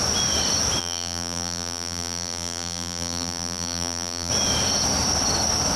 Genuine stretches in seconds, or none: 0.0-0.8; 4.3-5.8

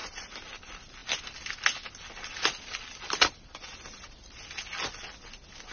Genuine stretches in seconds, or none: 0.6-5.7

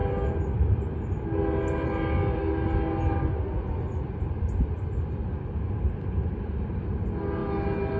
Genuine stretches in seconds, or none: 0.0-8.0

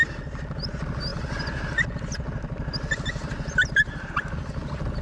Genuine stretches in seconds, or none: 0.0-5.0

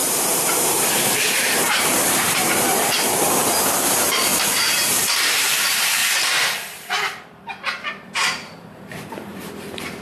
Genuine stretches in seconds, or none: 6.0-7.3

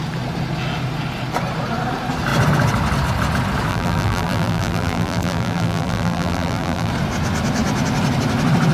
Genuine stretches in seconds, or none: 0.0-3.7; 6.9-8.7

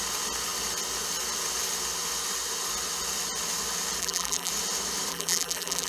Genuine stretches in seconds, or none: 0.0-4.0; 4.5-5.1

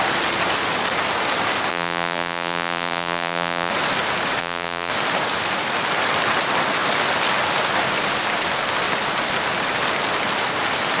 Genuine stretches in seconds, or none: 0.0-1.7; 3.7-4.4; 4.9-11.0